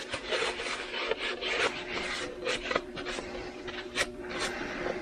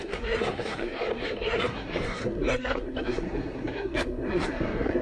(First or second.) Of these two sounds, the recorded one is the first